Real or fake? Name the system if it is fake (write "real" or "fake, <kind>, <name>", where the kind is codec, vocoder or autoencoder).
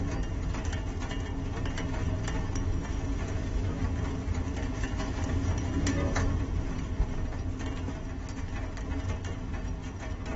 real